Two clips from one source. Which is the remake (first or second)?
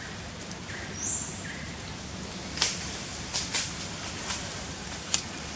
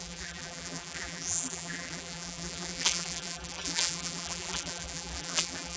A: second